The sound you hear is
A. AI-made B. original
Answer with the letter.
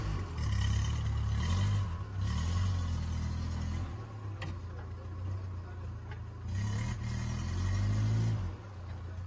B